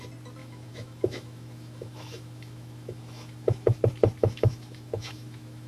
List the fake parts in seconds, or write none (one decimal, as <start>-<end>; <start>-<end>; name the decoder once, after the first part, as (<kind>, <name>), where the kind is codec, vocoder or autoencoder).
0.4-3.8 (autoencoder, DAC-VAE); 4.2-5.7